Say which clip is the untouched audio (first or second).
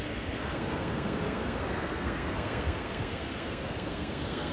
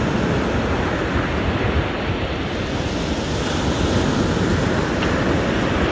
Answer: second